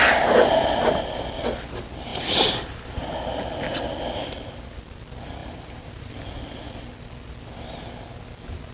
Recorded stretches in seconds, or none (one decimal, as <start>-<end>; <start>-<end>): 0.0-2.1; 3.1-5.4; 6.1-8.7